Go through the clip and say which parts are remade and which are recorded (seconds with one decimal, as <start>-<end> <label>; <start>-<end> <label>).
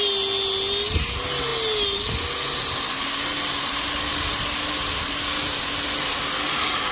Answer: 0.0-6.9 recorded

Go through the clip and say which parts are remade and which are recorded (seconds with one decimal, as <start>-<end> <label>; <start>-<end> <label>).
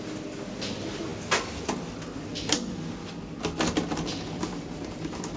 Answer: 0.0-5.4 recorded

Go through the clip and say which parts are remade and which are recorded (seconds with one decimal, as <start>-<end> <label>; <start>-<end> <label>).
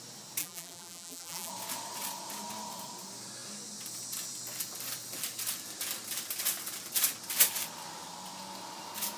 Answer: 0.0-0.4 recorded; 0.4-1.5 remade; 1.5-9.2 recorded